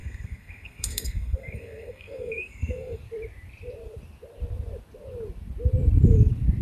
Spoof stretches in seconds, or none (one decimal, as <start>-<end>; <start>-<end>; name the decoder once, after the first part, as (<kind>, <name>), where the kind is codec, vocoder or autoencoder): 0.0-3.0 (codec, SNAC)